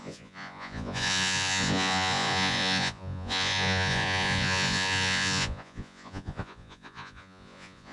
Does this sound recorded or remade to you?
remade